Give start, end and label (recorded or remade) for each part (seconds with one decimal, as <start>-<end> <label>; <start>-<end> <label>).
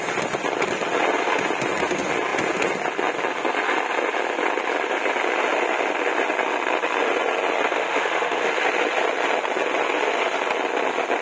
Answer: 0.0-7.7 recorded; 7.7-8.5 remade; 8.5-11.2 recorded